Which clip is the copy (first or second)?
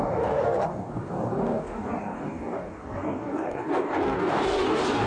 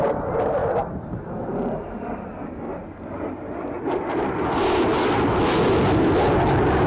first